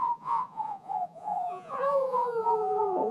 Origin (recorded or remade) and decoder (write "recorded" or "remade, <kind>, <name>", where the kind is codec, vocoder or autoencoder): remade, vocoder, Vocos